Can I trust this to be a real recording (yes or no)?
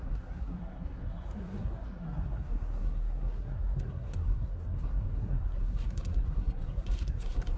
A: no